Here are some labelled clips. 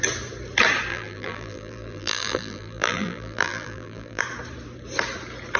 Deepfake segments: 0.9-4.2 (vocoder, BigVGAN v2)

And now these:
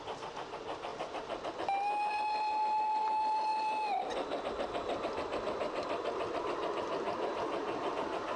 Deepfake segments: none

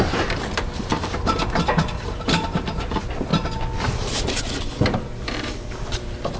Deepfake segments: 0.0-3.3 (vocoder, BigVGAN v2); 4.2-6.4

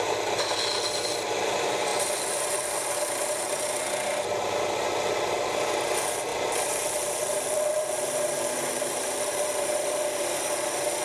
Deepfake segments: 6.3-10.0 (vocoder, BigVGAN v2)

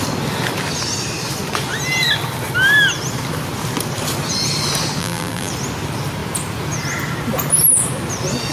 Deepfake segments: 5.0-5.5 (vocoder, BigVGAN v2)

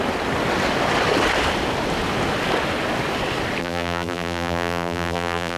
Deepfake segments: 3.6-5.6 (vocoder, BigVGAN v2)